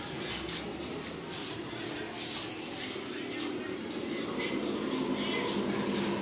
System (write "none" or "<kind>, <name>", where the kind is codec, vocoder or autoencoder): none